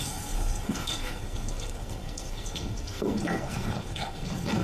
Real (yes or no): no